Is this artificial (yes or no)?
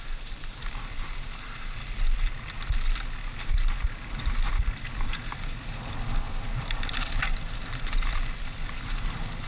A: no